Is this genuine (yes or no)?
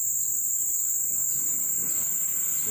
no